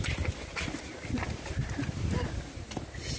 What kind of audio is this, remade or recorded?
recorded